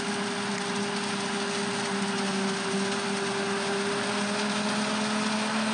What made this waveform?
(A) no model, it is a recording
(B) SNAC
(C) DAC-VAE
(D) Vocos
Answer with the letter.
A